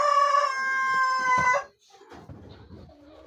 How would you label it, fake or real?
real